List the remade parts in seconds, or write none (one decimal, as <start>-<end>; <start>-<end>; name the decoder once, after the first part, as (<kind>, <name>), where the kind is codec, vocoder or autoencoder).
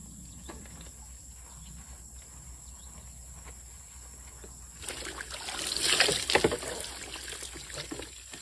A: none